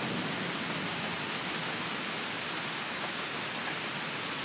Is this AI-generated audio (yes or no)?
no